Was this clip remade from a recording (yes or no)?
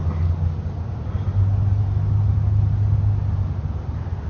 no